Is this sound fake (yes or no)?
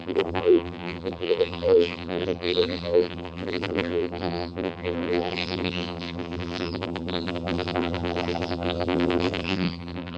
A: yes